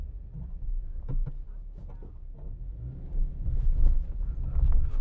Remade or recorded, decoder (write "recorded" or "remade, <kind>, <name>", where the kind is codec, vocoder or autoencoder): recorded